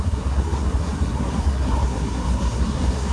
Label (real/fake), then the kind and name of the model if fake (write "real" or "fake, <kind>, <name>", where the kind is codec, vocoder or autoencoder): fake, codec, SNAC